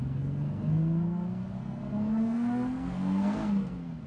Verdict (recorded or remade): remade